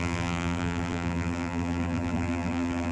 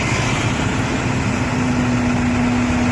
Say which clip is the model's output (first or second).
first